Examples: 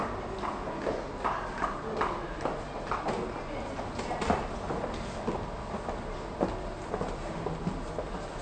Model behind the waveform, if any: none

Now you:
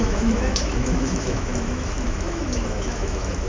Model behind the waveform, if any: autoencoder, DAC-VAE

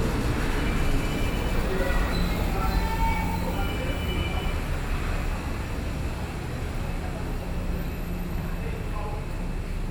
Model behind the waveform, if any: none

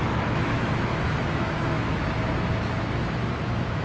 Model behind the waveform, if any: autoencoder, DAC-VAE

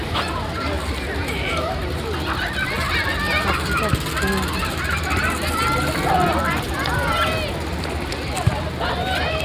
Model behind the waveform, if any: none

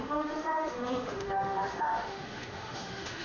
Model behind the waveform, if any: autoencoder, DAC-VAE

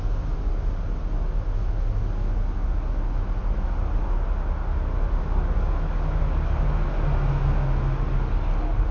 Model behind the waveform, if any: none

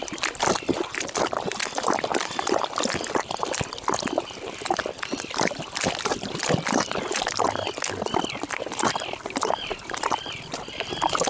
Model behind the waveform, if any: none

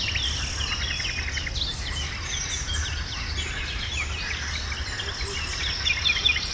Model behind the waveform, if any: none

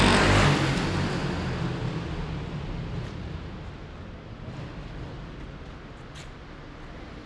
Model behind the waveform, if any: none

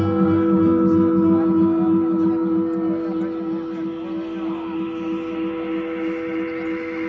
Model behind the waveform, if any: none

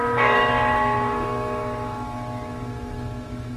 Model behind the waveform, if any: autoencoder, DAC-VAE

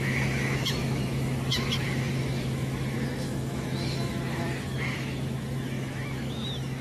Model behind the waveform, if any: autoencoder, DAC-VAE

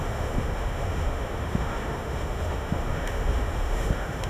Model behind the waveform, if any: autoencoder, DAC-VAE